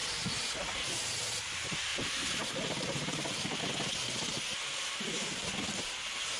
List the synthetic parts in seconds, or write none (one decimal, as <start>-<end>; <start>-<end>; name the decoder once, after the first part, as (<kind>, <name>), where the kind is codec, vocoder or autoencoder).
1.9-3.6 (vocoder, BigVGAN v2)